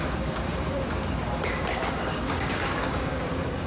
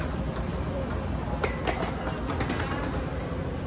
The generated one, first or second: first